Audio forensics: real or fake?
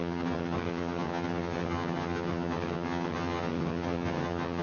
fake